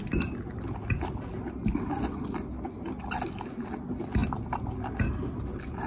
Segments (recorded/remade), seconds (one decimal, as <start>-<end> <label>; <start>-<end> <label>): 0.0-5.9 recorded